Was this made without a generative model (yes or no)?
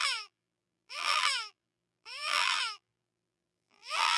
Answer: no